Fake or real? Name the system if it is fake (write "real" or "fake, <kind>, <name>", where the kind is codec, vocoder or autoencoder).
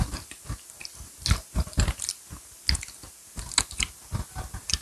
real